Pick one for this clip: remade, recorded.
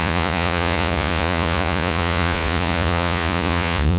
remade